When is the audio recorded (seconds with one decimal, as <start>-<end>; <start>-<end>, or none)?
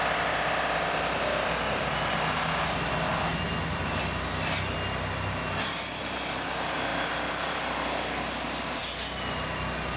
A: 0.0-10.0